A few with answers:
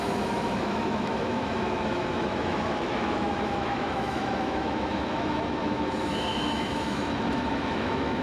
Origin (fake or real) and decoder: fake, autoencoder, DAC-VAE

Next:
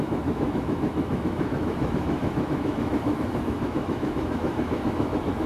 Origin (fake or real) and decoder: fake, autoencoder, DAC-VAE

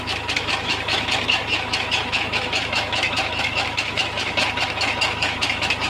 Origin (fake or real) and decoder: fake, autoencoder, DAC-VAE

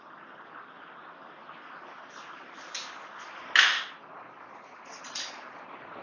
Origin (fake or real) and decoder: real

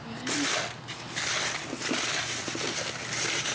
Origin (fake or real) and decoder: real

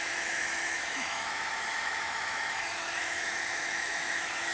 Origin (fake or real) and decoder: fake, autoencoder, DAC-VAE